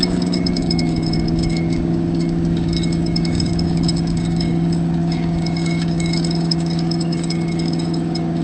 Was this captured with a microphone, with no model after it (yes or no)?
no